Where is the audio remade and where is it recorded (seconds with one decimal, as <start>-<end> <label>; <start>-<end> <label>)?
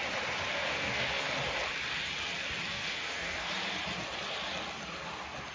0.0-0.7 recorded; 0.7-1.3 remade; 1.3-2.7 recorded; 2.7-3.5 remade; 3.5-5.5 recorded